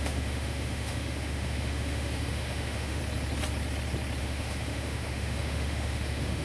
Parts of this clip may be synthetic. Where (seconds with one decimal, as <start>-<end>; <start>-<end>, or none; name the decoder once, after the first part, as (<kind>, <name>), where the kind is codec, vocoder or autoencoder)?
0.0-3.0 (autoencoder, DAC-VAE); 4.2-6.4